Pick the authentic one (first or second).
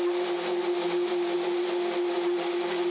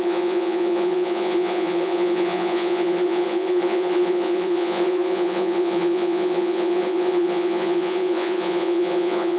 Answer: first